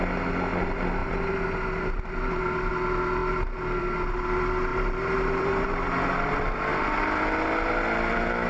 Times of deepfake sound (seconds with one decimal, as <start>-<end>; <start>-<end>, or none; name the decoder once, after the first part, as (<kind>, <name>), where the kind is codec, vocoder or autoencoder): 4.7-6.3 (vocoder, BigVGAN v2)